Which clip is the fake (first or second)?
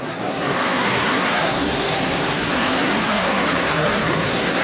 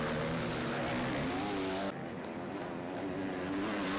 first